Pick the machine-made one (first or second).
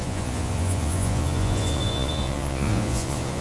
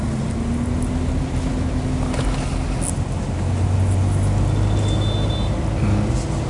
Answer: first